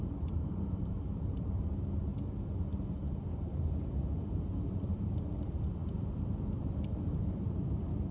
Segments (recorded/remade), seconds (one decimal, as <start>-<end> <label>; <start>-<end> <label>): 0.0-2.1 remade; 2.1-4.2 recorded; 4.2-8.1 remade

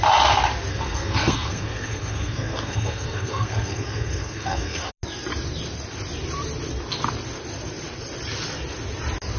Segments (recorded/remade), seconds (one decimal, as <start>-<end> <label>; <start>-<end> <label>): 0.0-0.7 recorded; 0.7-4.9 remade; 4.9-9.4 recorded

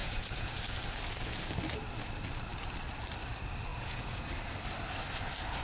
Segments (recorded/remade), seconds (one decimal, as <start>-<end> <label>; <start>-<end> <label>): 0.0-0.6 remade; 0.6-3.7 recorded; 3.7-4.3 remade; 4.3-5.6 recorded

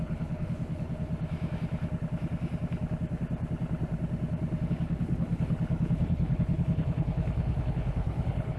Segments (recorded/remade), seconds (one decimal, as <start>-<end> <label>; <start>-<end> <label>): 0.0-1.1 remade; 1.1-4.7 recorded; 4.7-8.6 remade

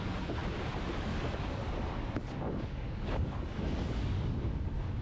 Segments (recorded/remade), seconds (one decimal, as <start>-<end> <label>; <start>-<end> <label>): 0.0-0.4 remade; 0.4-0.9 recorded; 0.9-5.0 remade

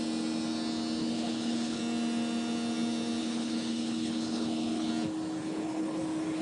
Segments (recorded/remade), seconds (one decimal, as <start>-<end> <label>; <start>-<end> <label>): 0.0-1.0 recorded; 1.0-1.8 remade; 1.8-3.2 recorded; 3.2-4.9 remade; 4.9-5.4 recorded; 5.4-6.0 remade; 6.0-6.4 recorded